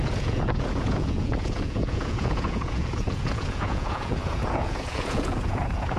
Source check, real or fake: fake